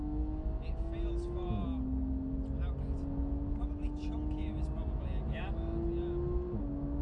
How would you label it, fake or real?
real